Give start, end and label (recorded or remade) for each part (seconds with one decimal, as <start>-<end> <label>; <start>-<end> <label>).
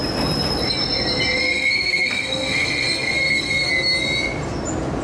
0.0-1.4 recorded; 1.4-3.7 remade; 3.7-5.0 recorded